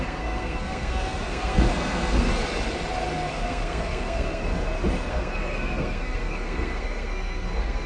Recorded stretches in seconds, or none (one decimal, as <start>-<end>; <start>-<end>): 2.3-3.3; 4.4-5.1